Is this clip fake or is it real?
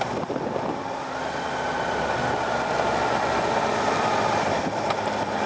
real